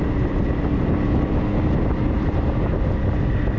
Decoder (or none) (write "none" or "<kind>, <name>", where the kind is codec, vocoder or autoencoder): none